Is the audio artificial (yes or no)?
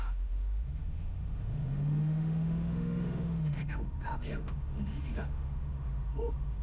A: yes